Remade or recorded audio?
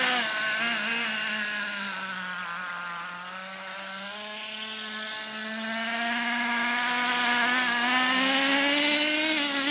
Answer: recorded